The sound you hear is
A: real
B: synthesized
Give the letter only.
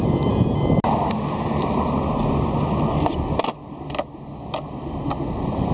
A